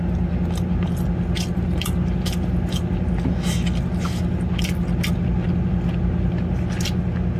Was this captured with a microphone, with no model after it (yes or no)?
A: yes